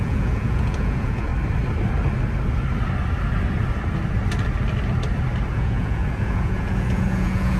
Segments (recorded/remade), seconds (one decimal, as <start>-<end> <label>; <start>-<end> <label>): 0.0-1.3 remade; 1.3-5.5 recorded; 5.5-7.6 remade